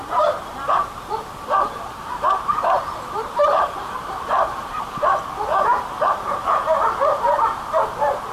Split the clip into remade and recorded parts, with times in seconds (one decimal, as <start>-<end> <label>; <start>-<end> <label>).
0.0-8.3 remade